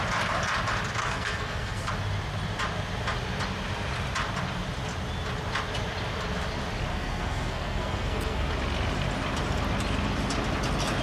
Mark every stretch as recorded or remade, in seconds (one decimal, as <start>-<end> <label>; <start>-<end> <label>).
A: 0.0-1.0 recorded; 1.0-1.9 remade; 1.9-6.9 recorded; 6.9-8.5 remade; 8.5-11.0 recorded